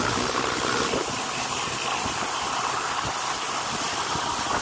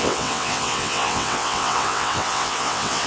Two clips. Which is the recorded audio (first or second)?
first